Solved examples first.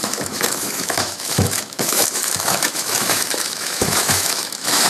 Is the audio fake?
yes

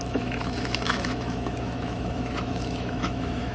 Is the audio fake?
yes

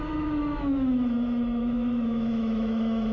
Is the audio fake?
yes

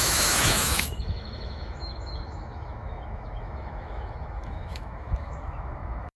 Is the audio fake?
yes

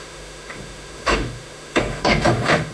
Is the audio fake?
yes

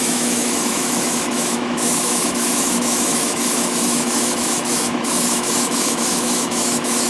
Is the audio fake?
yes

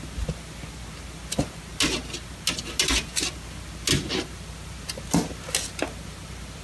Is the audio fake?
no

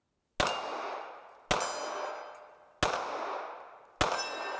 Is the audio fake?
no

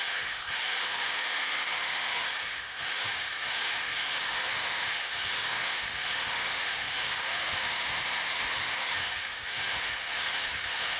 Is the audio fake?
yes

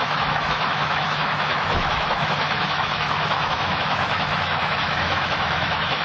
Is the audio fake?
yes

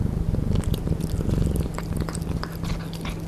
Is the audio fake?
no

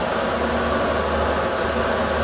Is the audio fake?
no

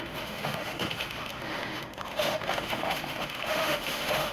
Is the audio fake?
yes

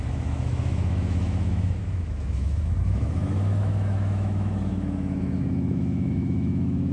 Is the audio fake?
yes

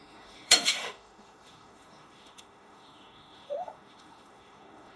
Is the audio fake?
yes